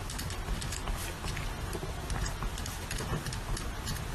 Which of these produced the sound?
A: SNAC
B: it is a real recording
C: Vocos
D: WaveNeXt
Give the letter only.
B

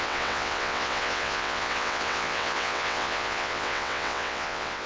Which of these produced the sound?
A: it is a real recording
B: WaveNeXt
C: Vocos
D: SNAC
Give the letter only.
B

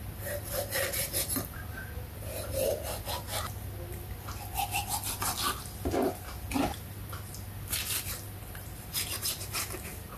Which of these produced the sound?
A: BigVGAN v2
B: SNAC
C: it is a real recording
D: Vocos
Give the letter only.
C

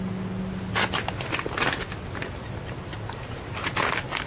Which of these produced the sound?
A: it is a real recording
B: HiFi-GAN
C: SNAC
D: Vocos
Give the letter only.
A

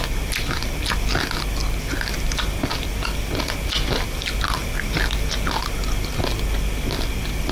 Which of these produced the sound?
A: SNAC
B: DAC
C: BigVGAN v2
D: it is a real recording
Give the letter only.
D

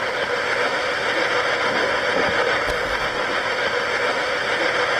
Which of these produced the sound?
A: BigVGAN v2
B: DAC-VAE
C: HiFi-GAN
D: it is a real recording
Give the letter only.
D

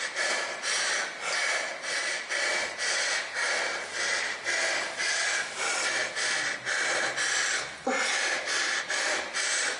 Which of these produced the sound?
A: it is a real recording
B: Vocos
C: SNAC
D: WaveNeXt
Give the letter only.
A